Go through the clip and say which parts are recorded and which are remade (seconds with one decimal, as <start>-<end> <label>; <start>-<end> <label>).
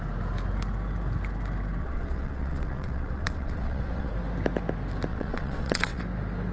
0.0-1.8 recorded; 1.8-4.1 remade; 4.1-5.1 recorded; 5.1-6.0 remade; 6.0-6.5 recorded